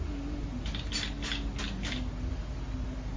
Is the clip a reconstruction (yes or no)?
no